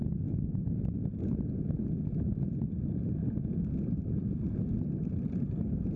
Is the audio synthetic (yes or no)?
no